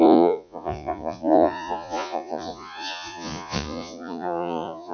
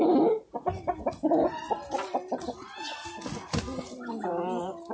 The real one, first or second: second